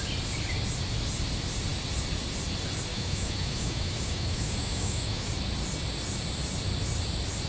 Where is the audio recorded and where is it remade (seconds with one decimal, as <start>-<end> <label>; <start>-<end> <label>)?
0.0-2.9 recorded; 2.9-5.3 remade; 5.3-7.5 recorded